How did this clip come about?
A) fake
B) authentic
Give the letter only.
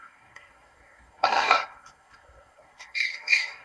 A